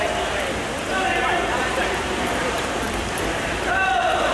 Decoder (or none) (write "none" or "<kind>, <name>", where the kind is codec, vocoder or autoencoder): vocoder, BigVGAN v2